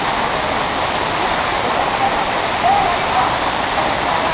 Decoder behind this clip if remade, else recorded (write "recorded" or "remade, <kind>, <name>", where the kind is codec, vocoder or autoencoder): recorded